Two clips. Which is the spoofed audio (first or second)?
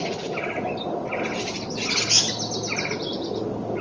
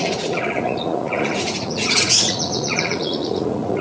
second